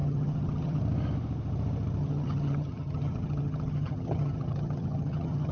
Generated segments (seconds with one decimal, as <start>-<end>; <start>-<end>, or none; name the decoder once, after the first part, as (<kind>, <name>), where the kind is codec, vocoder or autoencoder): 0.0-0.8 (vocoder, HiFi-GAN); 2.0-5.5